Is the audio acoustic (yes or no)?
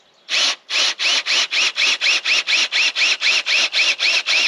yes